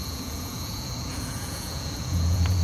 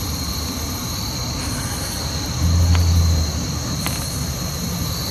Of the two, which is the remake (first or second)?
first